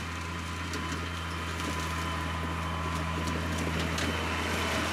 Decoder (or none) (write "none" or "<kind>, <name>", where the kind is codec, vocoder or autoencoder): none